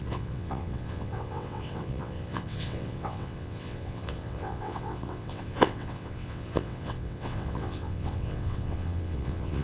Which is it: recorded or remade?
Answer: remade